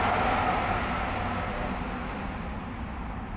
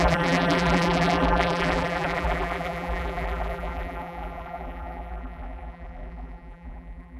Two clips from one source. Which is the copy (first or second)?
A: second